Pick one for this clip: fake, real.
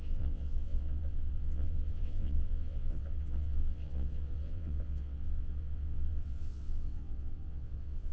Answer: fake